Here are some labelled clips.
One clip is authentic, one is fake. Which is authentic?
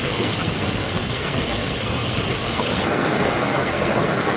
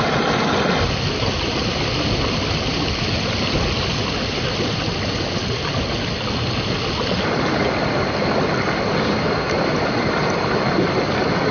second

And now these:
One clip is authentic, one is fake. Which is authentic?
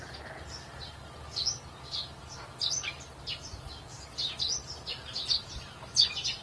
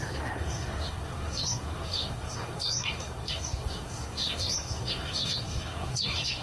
first